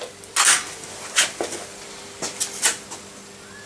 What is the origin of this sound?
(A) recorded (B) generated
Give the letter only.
A